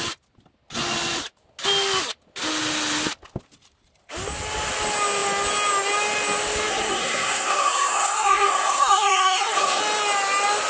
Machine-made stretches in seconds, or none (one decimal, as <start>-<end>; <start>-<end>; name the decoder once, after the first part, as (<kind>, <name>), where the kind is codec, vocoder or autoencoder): 6.7-9.8 (codec, SNAC)